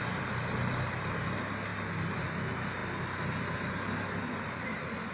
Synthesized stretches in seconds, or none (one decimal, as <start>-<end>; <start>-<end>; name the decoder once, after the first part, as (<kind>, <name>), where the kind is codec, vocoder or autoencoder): none